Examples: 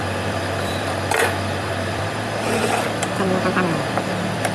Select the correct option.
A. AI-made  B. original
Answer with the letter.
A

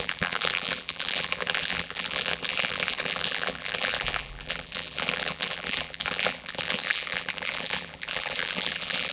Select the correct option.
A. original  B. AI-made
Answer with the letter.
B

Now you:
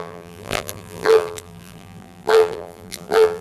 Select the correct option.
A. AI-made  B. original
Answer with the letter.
A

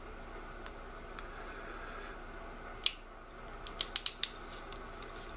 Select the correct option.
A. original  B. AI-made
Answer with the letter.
A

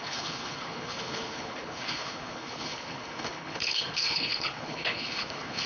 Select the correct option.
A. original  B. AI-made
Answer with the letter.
B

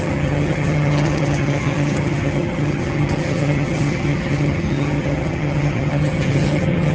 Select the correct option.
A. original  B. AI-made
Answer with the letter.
B